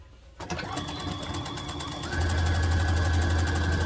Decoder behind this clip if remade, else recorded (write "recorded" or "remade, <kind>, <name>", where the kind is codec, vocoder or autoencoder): recorded